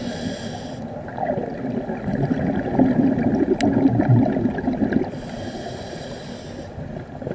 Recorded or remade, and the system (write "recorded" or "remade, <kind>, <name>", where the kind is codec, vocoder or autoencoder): recorded